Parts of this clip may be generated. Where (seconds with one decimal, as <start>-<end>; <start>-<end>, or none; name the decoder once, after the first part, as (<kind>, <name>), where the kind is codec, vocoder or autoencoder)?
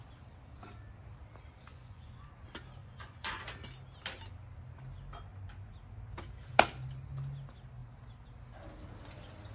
1.7-2.3 (vocoder, Vocos); 2.8-3.4